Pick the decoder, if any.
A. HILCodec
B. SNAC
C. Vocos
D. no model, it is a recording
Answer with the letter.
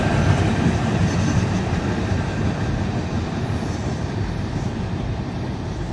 D